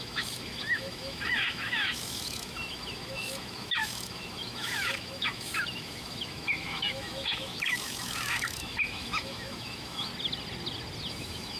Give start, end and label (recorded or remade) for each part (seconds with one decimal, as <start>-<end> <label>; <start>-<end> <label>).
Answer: 0.0-10.1 remade; 10.1-11.1 recorded; 11.1-11.6 remade